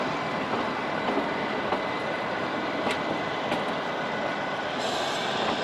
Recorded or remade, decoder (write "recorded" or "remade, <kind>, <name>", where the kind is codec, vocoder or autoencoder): recorded